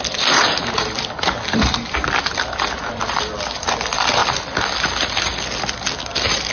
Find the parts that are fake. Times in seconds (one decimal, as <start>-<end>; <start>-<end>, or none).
none